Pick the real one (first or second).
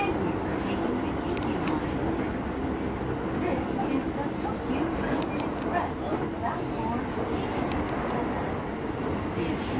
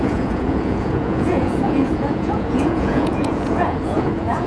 first